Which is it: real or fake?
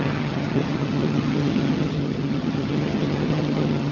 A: fake